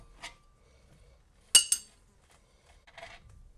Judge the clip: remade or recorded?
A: recorded